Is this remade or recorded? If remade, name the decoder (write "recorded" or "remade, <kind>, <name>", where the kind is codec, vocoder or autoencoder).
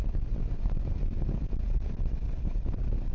recorded